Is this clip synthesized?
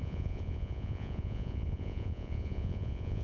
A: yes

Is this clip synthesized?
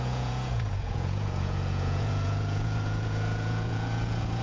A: yes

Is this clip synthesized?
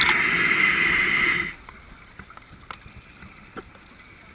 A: no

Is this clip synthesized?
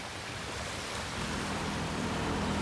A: no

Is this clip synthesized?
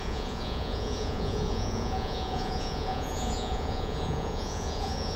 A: yes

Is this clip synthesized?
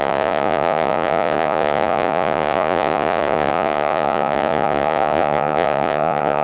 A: yes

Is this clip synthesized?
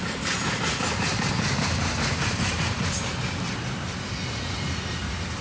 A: no